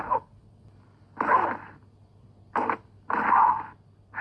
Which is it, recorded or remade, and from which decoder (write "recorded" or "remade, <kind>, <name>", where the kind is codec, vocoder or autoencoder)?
recorded